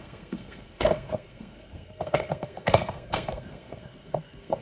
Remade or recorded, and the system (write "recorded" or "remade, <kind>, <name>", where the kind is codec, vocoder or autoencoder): remade, codec, SNAC